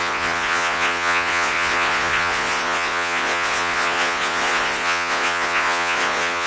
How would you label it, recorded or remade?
remade